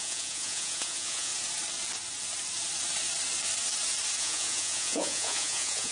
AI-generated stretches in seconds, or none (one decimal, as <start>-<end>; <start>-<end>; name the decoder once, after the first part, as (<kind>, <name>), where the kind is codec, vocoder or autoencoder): 0.0-1.3 (vocoder, Vocos); 4.2-5.9